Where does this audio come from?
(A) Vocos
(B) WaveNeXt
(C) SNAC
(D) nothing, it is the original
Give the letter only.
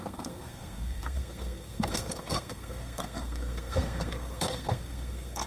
C